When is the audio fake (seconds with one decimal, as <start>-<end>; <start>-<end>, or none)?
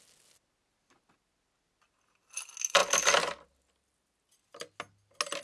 none